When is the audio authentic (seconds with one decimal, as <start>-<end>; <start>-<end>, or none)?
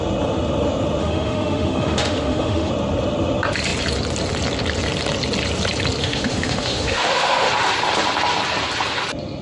0.0-1.0; 2.7-6.0; 7.5-9.4